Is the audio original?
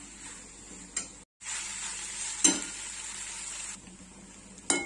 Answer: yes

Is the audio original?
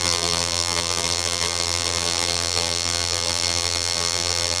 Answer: no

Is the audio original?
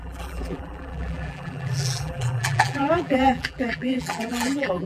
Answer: no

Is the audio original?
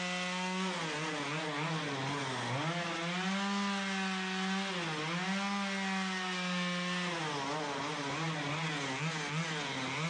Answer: yes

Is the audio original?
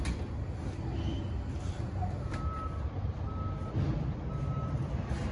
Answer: yes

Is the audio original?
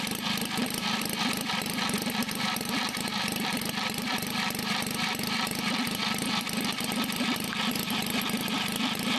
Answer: no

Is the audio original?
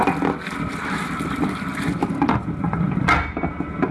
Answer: yes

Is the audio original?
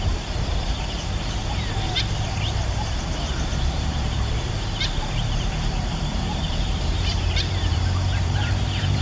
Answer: no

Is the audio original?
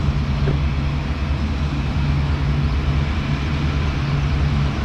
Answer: yes